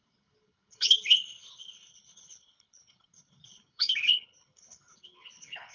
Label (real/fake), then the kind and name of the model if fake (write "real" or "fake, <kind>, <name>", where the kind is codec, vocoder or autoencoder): fake, codec, HILCodec